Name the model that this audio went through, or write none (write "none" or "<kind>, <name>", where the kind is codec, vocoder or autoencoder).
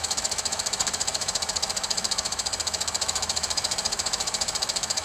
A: autoencoder, DAC-VAE